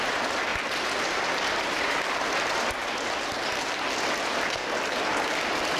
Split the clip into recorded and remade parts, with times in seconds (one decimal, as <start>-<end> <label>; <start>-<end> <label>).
0.0-5.8 recorded